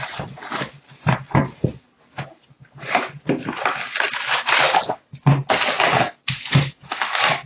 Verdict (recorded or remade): recorded